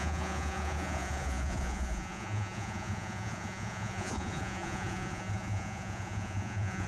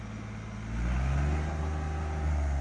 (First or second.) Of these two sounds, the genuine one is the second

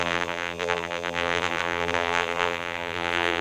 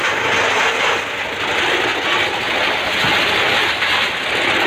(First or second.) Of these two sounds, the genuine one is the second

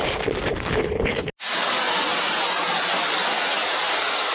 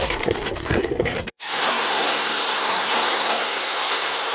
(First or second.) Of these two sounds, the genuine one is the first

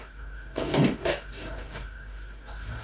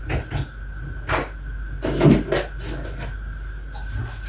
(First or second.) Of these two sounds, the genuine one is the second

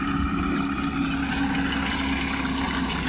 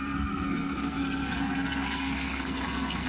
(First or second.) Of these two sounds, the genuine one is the first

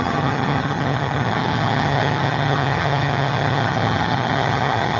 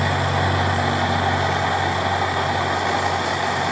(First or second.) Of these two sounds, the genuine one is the second